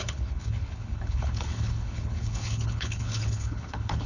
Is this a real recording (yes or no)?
no